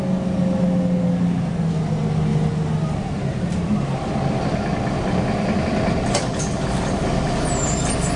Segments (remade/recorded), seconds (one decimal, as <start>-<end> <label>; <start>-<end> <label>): 0.0-8.2 recorded